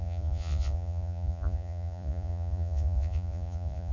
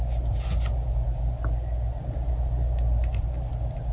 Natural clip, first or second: second